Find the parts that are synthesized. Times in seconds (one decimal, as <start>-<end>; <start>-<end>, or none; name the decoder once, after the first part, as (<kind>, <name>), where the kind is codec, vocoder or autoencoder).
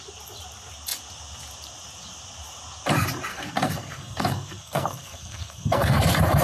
3.3-6.0 (codec, SNAC)